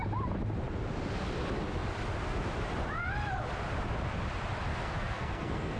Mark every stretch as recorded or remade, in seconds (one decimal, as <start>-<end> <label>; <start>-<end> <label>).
0.0-4.7 recorded; 4.7-5.8 remade